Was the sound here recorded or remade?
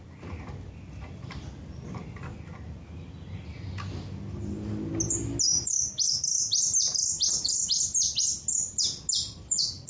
recorded